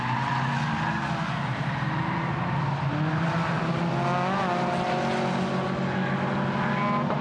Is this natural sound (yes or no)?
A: yes